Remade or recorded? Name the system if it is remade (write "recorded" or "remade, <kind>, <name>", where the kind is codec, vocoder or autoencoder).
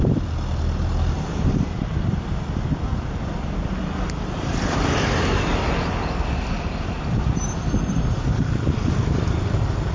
remade, vocoder, BigVGAN v2